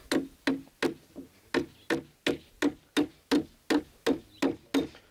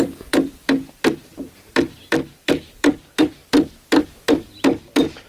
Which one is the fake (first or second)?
second